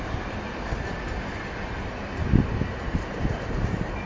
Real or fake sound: real